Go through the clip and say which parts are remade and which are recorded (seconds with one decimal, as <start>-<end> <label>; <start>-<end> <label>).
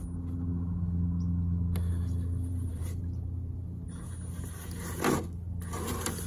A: 0.0-2.5 recorded; 2.5-3.0 remade; 3.0-6.3 recorded